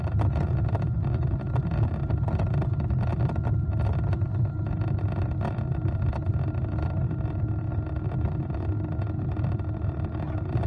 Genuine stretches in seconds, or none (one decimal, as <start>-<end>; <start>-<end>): 0.0-10.7